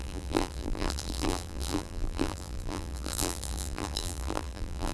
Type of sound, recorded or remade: remade